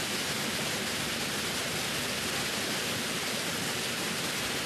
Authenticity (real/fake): real